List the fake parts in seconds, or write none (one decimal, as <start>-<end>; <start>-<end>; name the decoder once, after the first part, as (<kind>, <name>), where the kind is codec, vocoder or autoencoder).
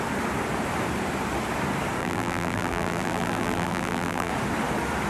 2.0-4.3 (vocoder, BigVGAN v2)